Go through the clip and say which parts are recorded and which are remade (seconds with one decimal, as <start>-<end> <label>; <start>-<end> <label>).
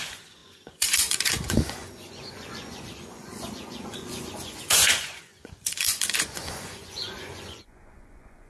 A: 0.0-8.5 remade